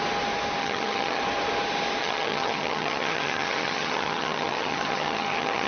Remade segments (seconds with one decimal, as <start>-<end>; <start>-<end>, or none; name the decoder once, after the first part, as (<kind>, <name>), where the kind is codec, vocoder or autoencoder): 0.6-1.2 (vocoder, HiFi-GAN); 2.0-5.7